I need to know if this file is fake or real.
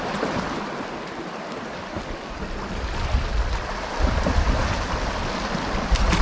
real